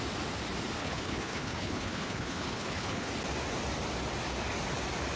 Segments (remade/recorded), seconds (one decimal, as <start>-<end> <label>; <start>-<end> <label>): 0.0-0.8 recorded; 0.8-3.1 remade; 3.1-5.2 recorded